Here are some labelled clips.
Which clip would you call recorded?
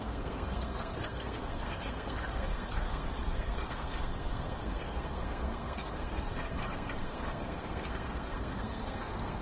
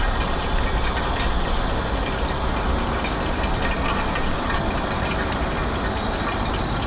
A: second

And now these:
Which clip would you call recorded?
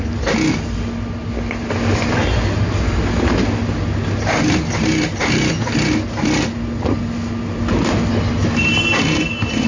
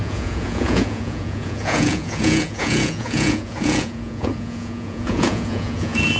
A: first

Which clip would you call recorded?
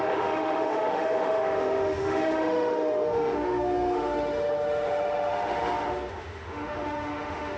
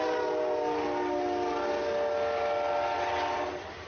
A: second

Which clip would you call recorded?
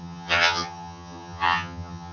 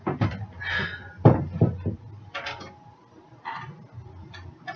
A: second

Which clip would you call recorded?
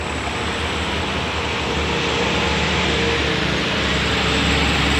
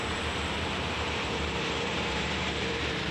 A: first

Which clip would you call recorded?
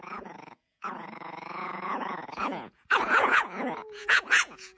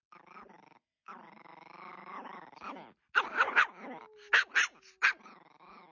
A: second